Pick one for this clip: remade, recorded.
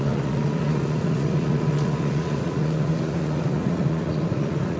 remade